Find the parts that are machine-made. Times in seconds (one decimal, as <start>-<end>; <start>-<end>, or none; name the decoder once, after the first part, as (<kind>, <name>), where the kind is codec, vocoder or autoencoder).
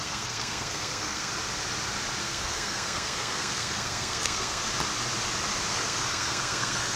0.0-1.3 (codec, SNAC); 2.2-4.6; 5.7-7.0